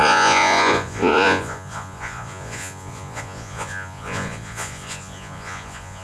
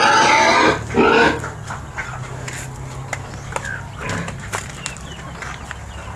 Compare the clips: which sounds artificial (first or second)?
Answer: first